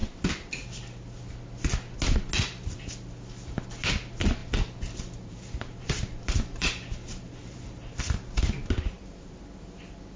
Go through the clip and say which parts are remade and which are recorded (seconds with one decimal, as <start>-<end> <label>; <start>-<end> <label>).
0.0-4.4 recorded; 4.4-9.1 remade; 9.1-10.2 recorded